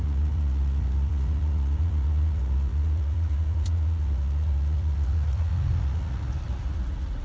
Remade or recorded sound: remade